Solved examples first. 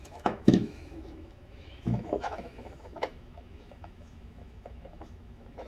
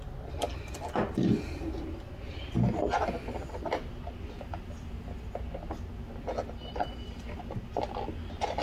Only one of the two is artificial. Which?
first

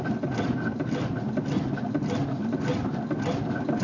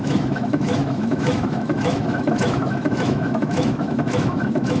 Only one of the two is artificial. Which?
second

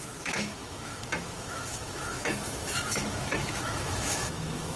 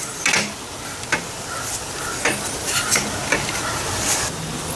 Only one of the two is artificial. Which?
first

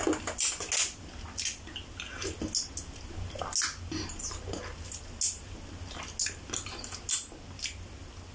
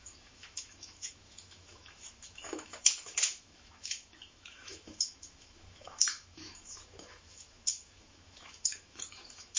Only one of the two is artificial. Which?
second